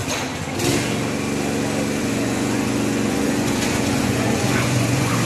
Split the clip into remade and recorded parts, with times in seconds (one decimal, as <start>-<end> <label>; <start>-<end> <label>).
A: 0.0-2.0 recorded; 2.0-5.3 remade